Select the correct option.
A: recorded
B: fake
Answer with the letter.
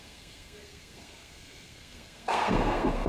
B